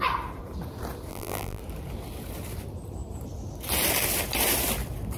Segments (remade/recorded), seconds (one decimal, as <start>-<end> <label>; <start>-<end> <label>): 0.0-1.1 recorded; 1.1-1.6 remade; 1.6-5.2 recorded